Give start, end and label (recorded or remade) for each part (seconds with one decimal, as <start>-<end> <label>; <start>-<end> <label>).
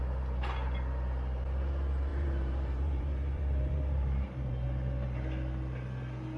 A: 0.0-2.1 recorded; 2.1-4.5 remade; 4.5-6.4 recorded